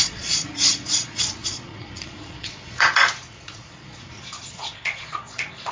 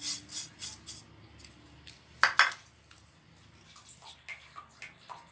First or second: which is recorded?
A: second